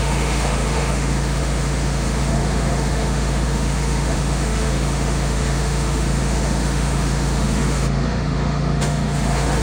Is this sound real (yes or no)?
no